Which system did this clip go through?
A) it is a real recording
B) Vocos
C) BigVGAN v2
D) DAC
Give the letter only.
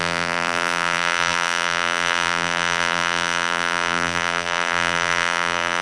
C